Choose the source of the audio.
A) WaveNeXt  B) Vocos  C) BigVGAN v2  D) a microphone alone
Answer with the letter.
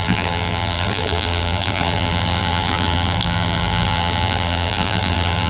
C